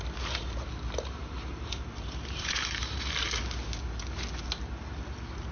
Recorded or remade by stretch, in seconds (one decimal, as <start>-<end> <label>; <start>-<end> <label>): 0.0-1.2 recorded; 1.2-3.1 remade; 3.1-5.5 recorded